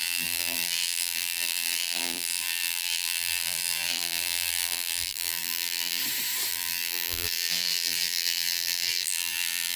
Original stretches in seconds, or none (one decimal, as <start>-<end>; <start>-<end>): 6.0-6.5